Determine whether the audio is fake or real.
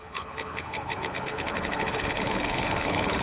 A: fake